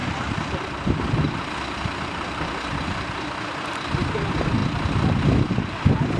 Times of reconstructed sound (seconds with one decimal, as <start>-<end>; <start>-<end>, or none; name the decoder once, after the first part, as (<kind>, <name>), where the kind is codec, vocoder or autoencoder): 0.0-2.5 (vocoder, BigVGAN v2)